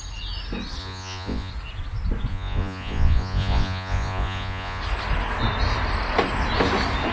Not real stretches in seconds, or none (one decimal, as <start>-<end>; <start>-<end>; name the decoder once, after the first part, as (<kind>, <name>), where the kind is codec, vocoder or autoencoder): 0.8-1.5 (vocoder, Vocos); 2.3-4.8